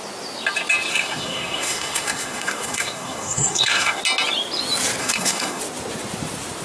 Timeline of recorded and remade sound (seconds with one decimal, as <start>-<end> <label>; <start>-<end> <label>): 0.0-0.9 recorded; 0.9-4.0 remade; 4.0-5.0 recorded; 5.0-5.6 remade; 5.6-6.6 recorded

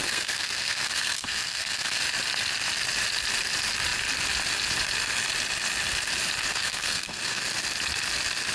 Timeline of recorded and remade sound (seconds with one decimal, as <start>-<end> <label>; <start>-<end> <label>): 0.0-2.0 remade; 2.0-6.5 recorded; 6.5-7.4 remade; 7.4-8.5 recorded

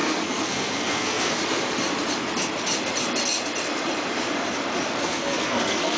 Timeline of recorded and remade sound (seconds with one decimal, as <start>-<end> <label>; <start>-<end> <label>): 0.0-1.4 remade; 1.4-5.0 recorded; 5.0-6.0 remade

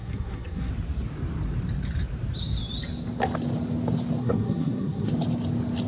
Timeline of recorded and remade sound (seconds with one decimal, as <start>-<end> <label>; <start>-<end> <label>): 0.0-0.7 remade; 0.7-4.2 recorded; 4.2-5.1 remade; 5.1-5.9 recorded